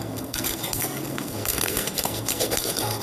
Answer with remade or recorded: remade